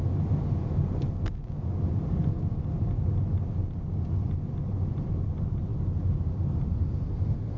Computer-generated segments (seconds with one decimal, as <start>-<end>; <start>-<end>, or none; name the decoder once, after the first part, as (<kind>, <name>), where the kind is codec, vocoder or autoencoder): none